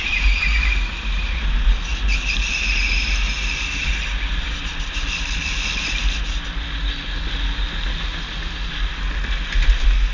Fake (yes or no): no